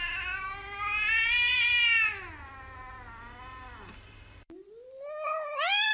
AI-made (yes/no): no